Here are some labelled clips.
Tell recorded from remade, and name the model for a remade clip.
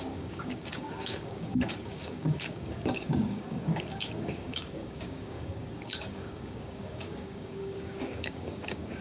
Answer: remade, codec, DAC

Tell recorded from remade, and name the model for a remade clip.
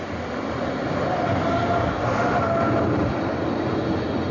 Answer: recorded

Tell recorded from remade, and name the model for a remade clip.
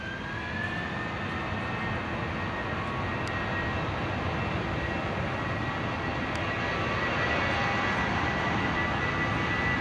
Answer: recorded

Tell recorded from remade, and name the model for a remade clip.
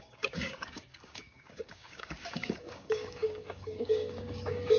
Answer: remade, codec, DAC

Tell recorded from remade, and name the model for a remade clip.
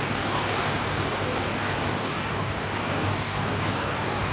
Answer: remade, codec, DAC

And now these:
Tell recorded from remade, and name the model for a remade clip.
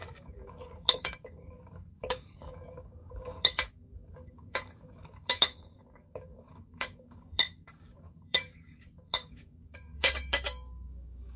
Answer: remade, codec, DAC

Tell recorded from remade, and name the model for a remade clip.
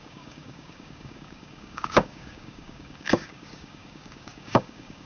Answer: remade, codec, DAC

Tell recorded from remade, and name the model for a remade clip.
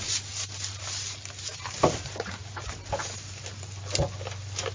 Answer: recorded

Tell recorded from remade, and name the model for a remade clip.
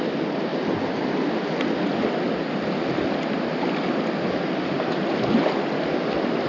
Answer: recorded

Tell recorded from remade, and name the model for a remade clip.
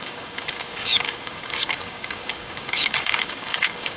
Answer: remade, codec, DAC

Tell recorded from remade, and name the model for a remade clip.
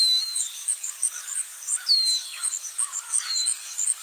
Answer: remade, codec, DAC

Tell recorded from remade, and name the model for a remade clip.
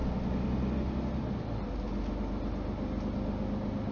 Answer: recorded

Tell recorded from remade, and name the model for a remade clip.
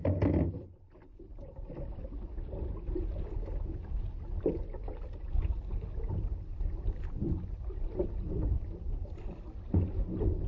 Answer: recorded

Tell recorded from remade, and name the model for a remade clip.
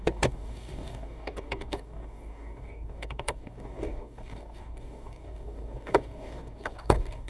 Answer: remade, codec, DAC